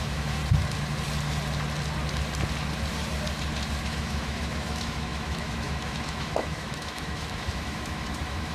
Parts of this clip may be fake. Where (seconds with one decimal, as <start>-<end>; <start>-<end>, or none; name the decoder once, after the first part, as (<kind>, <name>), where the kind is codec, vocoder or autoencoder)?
0.0-0.4 (autoencoder, DAC-VAE); 3.8-8.5